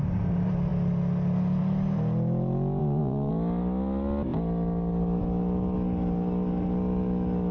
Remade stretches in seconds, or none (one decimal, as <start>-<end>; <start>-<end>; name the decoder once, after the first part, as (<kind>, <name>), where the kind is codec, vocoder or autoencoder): 2.8-3.3 (vocoder, Vocos)